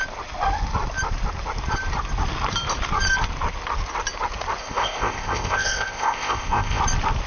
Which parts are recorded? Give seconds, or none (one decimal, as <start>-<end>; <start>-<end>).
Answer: 0.0-4.6; 6.8-7.3